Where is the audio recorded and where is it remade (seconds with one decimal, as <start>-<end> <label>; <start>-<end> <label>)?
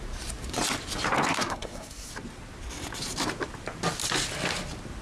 0.0-1.3 recorded; 1.3-2.1 remade; 2.1-5.0 recorded